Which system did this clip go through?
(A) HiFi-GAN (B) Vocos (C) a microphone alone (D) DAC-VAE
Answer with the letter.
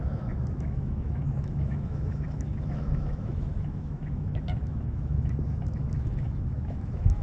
D